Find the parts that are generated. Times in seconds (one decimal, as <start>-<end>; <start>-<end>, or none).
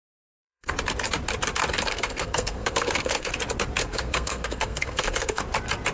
0.0-0.7; 1.9-3.3; 3.8-5.4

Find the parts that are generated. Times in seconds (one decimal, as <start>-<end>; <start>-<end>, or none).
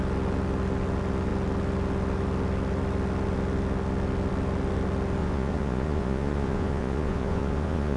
5.2-8.0